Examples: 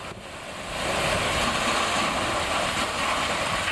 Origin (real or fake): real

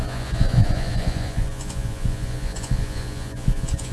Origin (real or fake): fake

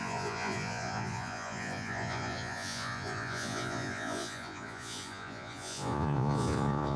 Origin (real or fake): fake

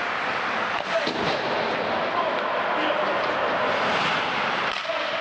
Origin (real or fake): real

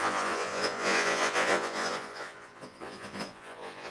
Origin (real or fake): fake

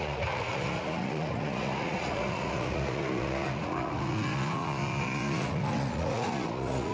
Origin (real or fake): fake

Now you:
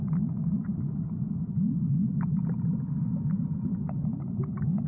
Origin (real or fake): real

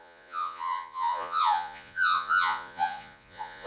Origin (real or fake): fake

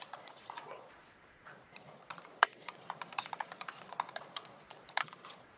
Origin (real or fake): fake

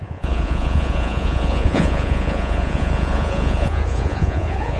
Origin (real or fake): fake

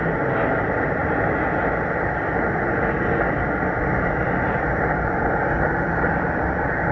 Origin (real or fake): real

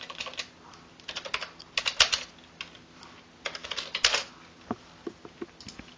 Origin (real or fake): real